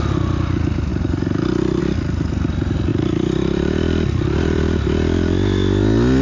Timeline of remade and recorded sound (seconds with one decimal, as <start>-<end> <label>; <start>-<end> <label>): 0.0-0.9 recorded; 0.9-1.8 remade; 1.8-2.9 recorded; 2.9-4.6 remade; 4.6-6.2 recorded